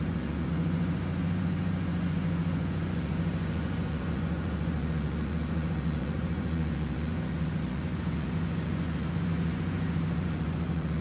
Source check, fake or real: fake